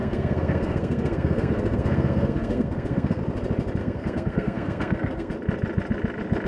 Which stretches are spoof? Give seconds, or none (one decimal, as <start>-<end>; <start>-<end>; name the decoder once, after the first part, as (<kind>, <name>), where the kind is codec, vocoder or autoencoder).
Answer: 0.0-3.2 (codec, SNAC); 3.8-5.3